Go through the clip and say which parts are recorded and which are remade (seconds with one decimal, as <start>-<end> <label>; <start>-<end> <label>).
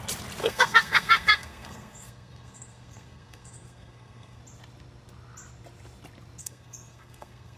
0.0-0.4 recorded; 0.4-4.4 remade; 4.4-6.4 recorded; 6.4-7.6 remade